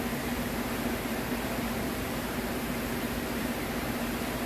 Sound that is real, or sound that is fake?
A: fake